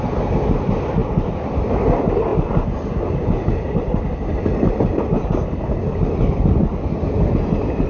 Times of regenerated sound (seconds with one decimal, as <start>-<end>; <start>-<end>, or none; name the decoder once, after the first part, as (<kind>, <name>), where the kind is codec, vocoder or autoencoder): 1.0-1.7 (vocoder, BigVGAN v2)